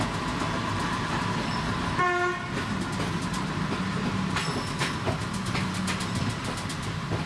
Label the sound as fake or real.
real